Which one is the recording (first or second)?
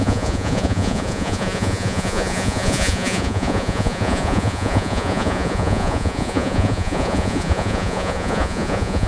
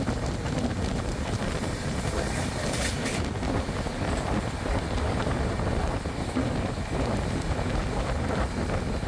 second